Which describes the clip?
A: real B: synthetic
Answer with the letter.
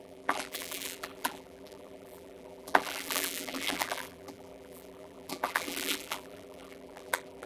B